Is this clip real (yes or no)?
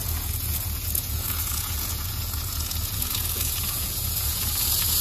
no